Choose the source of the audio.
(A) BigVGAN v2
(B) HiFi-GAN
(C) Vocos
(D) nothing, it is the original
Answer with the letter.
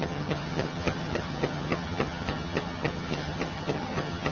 B